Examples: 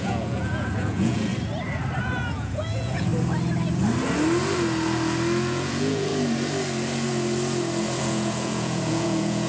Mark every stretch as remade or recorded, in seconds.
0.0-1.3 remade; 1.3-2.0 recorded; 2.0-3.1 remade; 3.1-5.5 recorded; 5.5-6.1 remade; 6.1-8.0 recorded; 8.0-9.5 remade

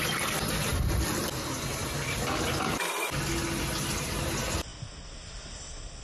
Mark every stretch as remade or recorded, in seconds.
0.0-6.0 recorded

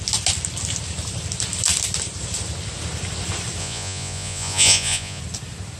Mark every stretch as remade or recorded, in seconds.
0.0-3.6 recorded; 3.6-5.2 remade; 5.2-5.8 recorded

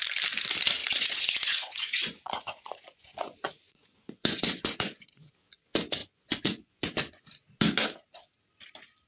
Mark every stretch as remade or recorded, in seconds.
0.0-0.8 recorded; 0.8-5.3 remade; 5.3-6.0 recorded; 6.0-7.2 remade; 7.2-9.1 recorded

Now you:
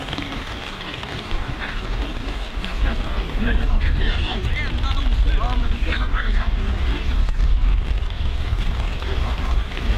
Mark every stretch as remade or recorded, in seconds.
0.0-4.5 remade; 4.5-5.6 recorded; 5.6-10.0 remade

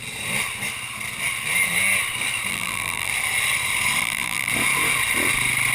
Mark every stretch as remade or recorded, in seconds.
0.0-2.5 recorded; 2.5-3.1 remade; 3.1-4.0 recorded; 4.0-4.5 remade; 4.5-5.7 recorded

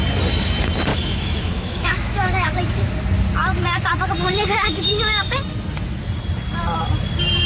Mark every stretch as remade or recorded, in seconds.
0.0-0.9 recorded; 0.9-2.9 remade; 2.9-7.5 recorded